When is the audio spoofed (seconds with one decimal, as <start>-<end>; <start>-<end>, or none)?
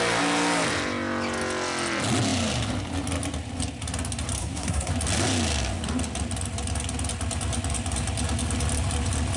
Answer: 4.4-4.9